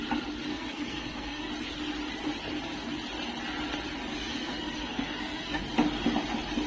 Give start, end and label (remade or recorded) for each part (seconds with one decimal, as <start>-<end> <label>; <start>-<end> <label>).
0.0-0.5 recorded; 0.5-1.5 remade; 1.5-4.3 recorded; 4.3-5.6 remade; 5.6-6.7 recorded